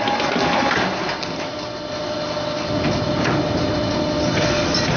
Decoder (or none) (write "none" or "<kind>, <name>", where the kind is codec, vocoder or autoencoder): none